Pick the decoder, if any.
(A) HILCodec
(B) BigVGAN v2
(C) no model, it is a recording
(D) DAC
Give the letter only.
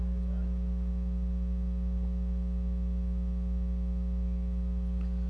C